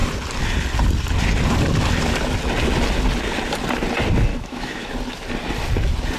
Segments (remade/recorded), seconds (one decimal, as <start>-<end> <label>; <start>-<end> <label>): 0.0-4.3 recorded; 4.3-4.9 remade; 4.9-6.2 recorded